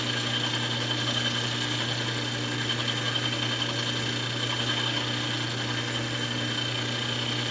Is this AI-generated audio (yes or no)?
no